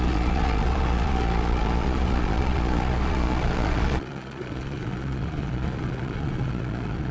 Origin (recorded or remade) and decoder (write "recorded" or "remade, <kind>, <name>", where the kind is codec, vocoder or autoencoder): remade, vocoder, Vocos